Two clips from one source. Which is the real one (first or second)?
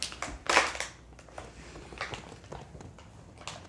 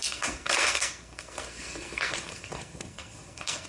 first